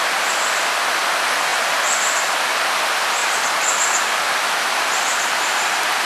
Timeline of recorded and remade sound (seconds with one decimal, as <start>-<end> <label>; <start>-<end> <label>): 0.0-1.5 recorded; 1.5-2.2 remade; 2.2-3.2 recorded; 3.2-5.4 remade; 5.4-6.0 recorded